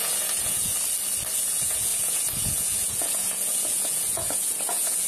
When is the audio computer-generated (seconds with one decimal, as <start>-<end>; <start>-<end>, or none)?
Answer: 0.0-0.7; 1.4-5.1